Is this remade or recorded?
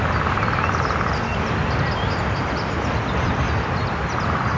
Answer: recorded